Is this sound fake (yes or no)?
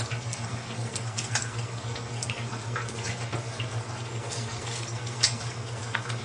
yes